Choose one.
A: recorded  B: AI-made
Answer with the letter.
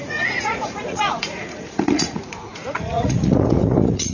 B